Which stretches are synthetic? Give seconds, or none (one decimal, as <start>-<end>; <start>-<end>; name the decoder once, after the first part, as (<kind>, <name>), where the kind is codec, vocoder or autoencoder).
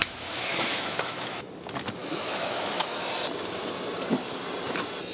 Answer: 0.0-1.5 (autoencoder, DAC-VAE); 2.0-3.1